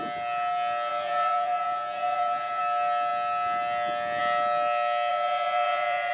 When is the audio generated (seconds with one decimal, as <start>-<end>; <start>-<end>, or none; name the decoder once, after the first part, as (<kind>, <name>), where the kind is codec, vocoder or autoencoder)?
0.9-2.6 (vocoder, Vocos); 5.1-6.1